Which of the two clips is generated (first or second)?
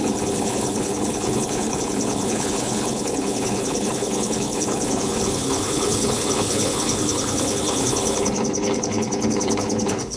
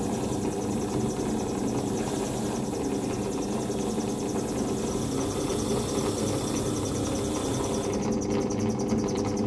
first